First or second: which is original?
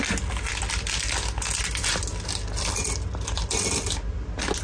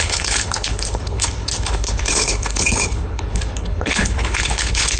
first